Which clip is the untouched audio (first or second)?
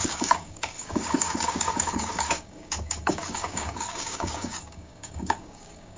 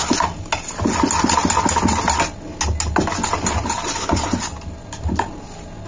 second